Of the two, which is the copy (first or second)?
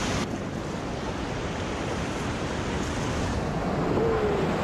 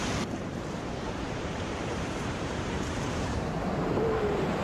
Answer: second